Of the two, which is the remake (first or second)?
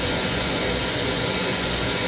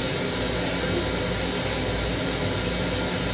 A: first